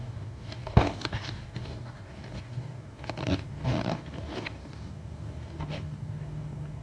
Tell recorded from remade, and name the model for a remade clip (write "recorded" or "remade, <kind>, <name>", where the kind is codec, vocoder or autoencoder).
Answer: remade, codec, DAC